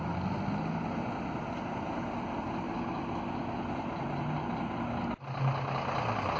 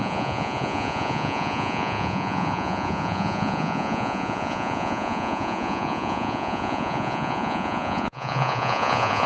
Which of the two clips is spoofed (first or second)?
second